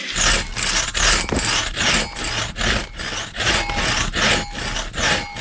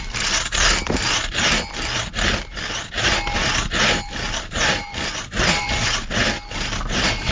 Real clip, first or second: first